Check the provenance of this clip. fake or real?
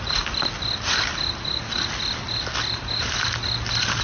real